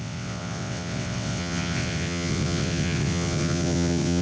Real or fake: fake